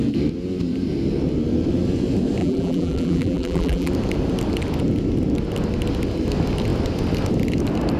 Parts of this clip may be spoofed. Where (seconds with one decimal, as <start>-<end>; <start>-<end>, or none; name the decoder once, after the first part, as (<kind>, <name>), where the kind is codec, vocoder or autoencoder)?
2.4-3.9 (vocoder, BigVGAN v2)